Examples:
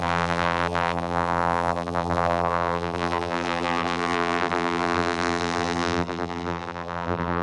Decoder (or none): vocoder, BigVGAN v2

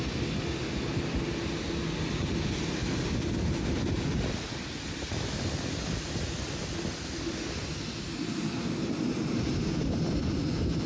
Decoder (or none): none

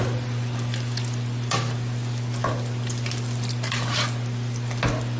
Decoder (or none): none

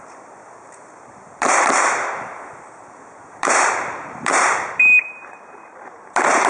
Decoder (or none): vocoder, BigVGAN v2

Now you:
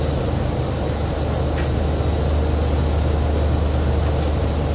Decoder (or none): none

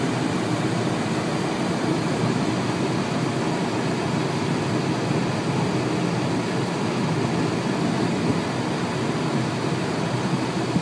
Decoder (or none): none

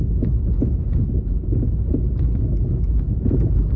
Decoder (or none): none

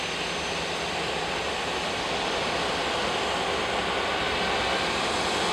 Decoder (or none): none